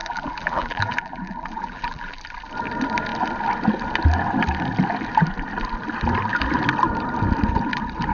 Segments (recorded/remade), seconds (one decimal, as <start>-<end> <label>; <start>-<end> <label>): 0.0-2.2 remade; 2.2-8.1 recorded